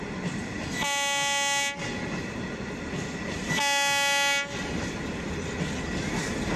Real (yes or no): yes